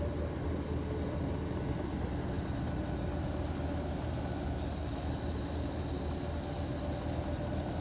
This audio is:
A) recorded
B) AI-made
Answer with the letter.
A